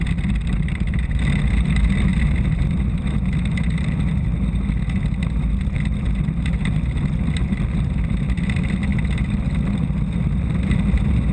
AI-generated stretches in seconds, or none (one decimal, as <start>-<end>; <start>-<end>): none